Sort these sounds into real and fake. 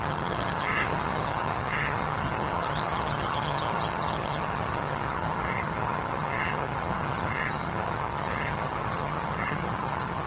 fake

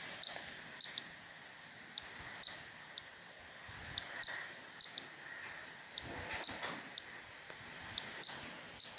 real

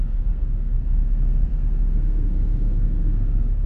fake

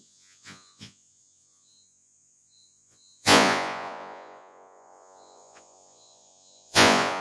fake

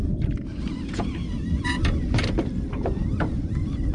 real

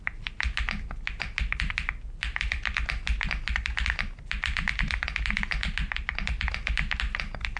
real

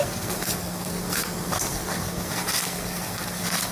fake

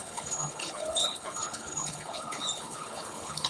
fake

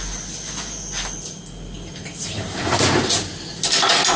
real